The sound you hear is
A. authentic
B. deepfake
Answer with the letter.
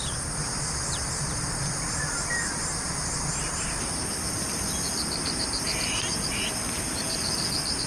B